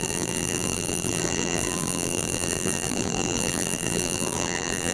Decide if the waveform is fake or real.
fake